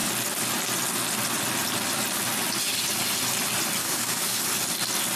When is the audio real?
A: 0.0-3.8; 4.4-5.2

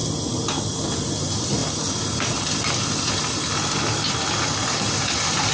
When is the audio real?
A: 0.0-1.2; 1.6-4.9

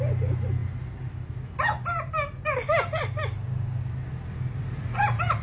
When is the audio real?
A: 0.0-5.4